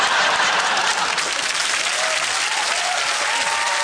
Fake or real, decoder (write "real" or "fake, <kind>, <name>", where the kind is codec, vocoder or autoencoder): real